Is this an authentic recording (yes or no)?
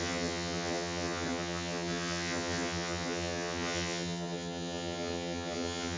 no